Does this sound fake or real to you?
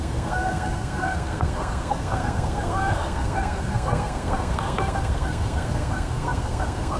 fake